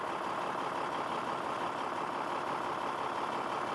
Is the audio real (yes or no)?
yes